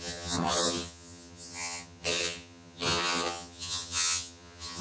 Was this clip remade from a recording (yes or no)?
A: yes